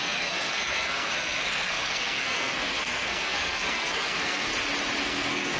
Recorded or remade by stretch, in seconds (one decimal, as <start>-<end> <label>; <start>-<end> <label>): 0.0-4.5 remade; 4.5-5.0 recorded; 5.0-5.6 remade